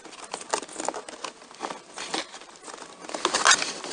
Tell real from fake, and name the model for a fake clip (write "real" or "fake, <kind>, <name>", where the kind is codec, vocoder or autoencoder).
real